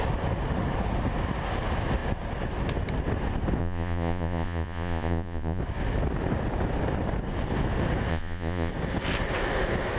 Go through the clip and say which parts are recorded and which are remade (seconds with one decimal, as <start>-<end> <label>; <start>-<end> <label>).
0.0-3.6 recorded; 3.6-5.6 remade; 5.6-8.1 recorded; 8.1-8.7 remade; 8.7-10.0 recorded